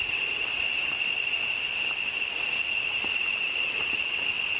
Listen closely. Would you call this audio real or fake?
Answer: real